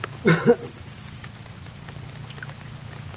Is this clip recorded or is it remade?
recorded